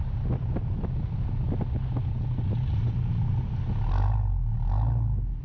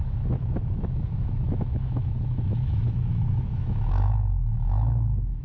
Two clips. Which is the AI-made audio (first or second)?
second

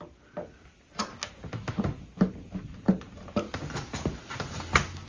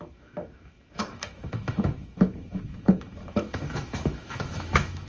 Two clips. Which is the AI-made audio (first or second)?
second